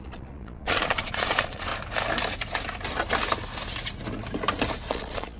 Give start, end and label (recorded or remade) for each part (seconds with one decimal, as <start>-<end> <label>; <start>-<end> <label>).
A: 0.0-1.7 remade; 1.7-4.9 recorded; 4.9-5.4 remade